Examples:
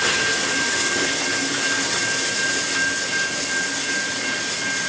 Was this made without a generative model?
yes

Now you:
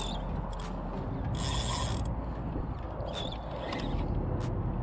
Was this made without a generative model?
yes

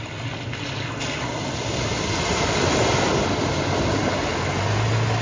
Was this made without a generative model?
yes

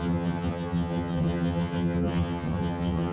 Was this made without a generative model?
no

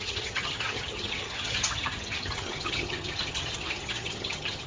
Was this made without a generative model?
no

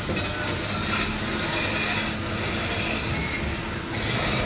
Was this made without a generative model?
yes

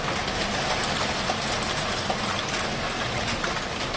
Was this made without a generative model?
yes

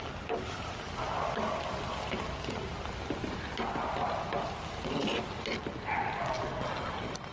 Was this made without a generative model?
yes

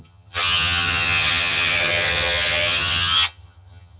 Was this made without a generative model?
no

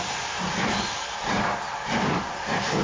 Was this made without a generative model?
yes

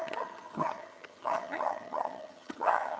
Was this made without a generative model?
no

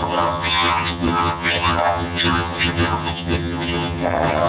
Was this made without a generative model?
no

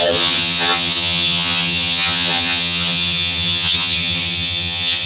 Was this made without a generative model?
no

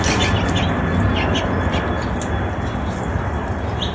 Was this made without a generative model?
yes